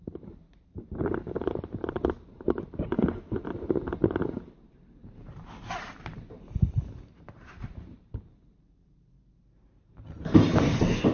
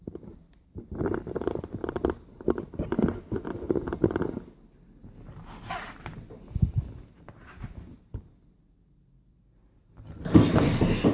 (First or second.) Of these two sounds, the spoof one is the first